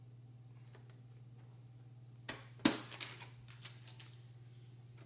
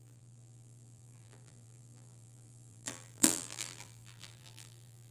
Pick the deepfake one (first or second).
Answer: second